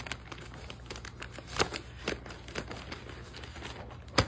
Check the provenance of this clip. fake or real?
real